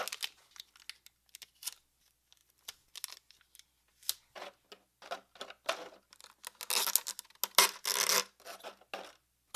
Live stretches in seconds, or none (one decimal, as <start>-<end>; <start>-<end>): 0.0-9.6